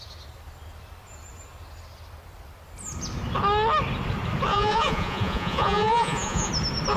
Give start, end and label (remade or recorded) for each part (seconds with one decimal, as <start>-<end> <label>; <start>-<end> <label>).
0.0-4.5 recorded; 4.5-6.5 remade; 6.5-7.0 recorded